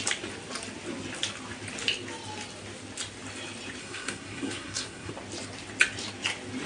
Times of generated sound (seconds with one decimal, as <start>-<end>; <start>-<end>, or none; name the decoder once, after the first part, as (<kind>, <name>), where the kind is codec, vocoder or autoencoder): 3.8-5.1 (codec, SNAC)